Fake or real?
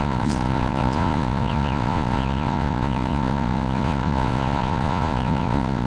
fake